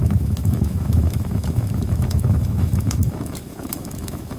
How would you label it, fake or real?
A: fake